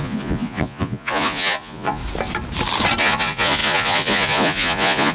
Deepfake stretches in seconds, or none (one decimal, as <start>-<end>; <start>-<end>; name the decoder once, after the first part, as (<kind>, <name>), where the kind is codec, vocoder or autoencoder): 0.0-2.0 (vocoder, Vocos); 3.0-5.1